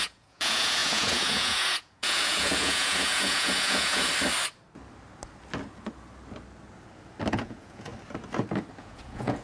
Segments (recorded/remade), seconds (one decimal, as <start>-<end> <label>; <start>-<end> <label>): 0.0-4.1 remade; 4.1-7.3 recorded; 7.3-7.9 remade; 7.9-8.8 recorded; 8.8-9.4 remade